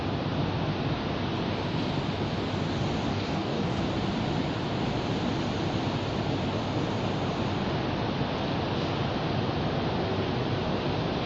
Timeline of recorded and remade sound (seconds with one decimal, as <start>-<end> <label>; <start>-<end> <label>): 0.0-3.1 recorded; 3.1-3.8 remade; 3.8-11.3 recorded